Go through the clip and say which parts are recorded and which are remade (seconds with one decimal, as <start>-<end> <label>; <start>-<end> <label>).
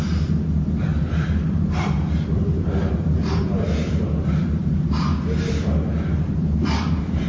0.0-5.1 remade; 5.1-6.3 recorded; 6.3-7.3 remade